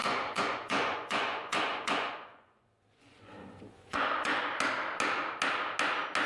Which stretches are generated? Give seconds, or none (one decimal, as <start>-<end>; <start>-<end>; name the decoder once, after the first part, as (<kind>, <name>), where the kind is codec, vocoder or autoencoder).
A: 0.0-4.4 (vocoder, Vocos)